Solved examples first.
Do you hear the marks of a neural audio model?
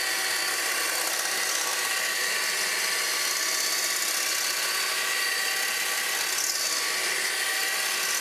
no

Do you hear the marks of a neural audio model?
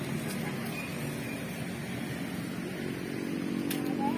no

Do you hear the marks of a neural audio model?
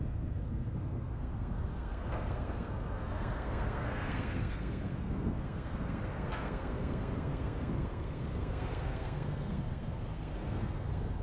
yes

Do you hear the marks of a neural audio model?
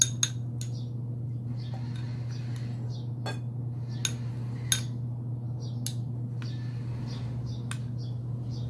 no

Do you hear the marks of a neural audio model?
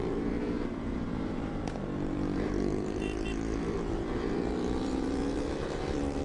yes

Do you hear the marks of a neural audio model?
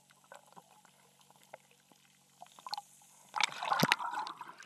no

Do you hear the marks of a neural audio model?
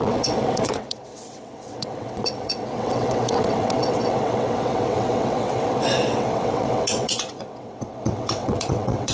yes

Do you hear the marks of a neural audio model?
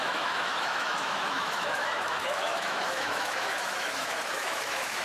yes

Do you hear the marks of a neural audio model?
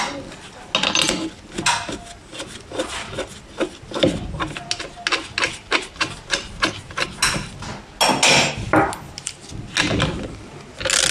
no